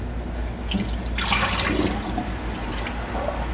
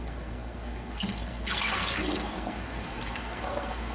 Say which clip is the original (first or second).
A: first